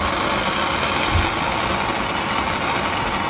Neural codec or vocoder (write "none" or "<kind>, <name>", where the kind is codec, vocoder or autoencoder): none